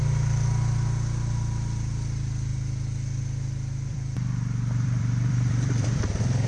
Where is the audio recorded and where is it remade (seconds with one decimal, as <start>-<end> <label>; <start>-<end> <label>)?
0.0-3.9 recorded; 3.9-6.0 remade; 6.0-6.5 recorded